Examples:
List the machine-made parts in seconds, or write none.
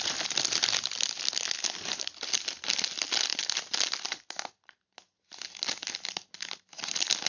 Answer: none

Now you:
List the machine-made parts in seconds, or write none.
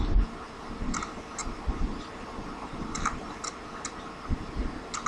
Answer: 1.4-3.5 (vocoder, BigVGAN v2)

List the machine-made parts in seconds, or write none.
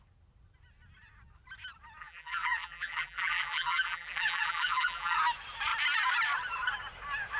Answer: 2.0-5.2 (vocoder, BigVGAN v2)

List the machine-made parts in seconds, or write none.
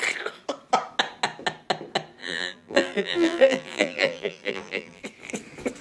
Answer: 2.2-5.0 (vocoder, BigVGAN v2)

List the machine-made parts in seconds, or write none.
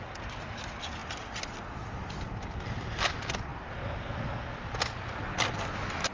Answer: none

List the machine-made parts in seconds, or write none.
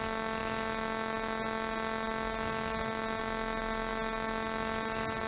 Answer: none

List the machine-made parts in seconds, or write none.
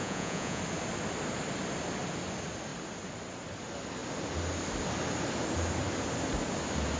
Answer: 0.0-0.6 (vocoder, Vocos)